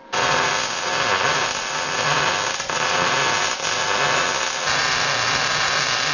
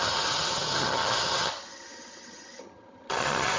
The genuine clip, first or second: first